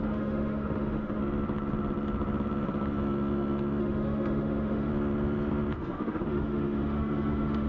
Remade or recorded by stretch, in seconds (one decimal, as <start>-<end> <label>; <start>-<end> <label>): 0.0-1.2 remade; 1.2-3.8 recorded; 3.8-4.9 remade; 4.9-5.8 recorded; 5.8-7.7 remade